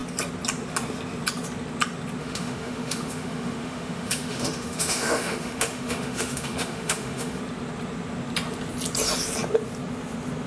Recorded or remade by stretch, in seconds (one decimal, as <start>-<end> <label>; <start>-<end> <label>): 0.0-2.2 recorded; 2.2-7.4 remade; 7.4-10.5 recorded